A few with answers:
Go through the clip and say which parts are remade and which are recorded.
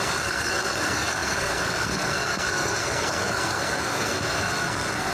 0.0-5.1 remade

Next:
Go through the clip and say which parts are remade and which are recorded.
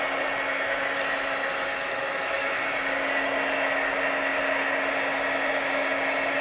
0.0-1.7 recorded; 1.7-2.6 remade; 2.6-6.4 recorded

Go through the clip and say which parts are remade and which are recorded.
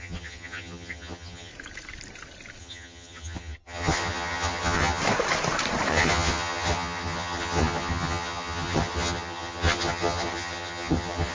0.0-1.5 remade; 1.5-2.6 recorded; 2.6-5.0 remade; 5.0-5.9 recorded; 5.9-11.3 remade